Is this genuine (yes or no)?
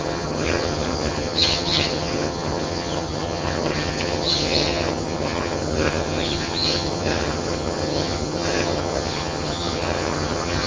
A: no